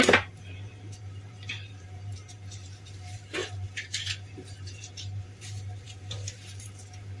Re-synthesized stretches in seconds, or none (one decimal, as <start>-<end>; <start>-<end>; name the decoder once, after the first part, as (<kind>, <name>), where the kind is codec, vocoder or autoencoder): 0.0-7.2 (vocoder, BigVGAN v2)